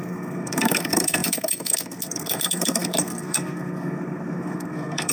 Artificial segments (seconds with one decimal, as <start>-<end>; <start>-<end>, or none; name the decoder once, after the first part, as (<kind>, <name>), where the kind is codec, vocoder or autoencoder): 0.0-5.1 (codec, SNAC)

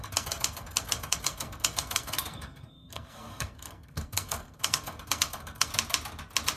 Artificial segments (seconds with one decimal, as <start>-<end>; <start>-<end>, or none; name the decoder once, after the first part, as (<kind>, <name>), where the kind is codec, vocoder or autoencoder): 0.0-5.7 (codec, SNAC)